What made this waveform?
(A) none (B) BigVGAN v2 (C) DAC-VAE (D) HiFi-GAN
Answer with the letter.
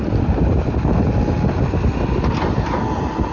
A